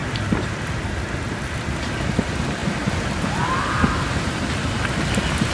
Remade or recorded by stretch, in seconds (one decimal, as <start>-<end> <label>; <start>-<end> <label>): 0.0-5.5 recorded